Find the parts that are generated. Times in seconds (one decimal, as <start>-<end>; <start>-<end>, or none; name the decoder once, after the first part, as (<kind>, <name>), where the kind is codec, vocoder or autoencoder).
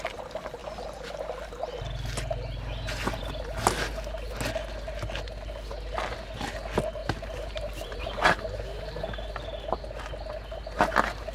7.0-9.3 (vocoder, BigVGAN v2)